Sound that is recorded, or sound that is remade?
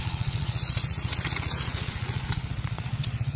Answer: remade